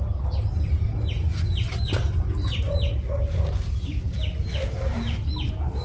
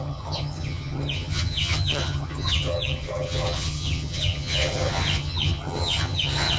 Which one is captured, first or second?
first